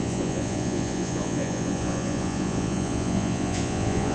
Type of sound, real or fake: fake